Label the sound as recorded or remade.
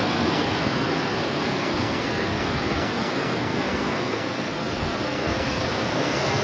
remade